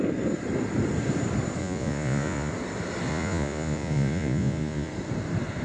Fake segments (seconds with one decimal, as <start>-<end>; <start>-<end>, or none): 1.6-2.5; 3.1-4.9